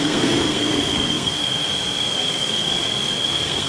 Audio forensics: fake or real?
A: fake